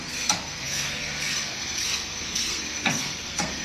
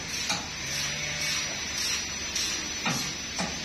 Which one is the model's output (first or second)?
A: first